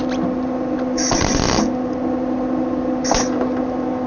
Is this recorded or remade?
recorded